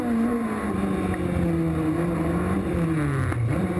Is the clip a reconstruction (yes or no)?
no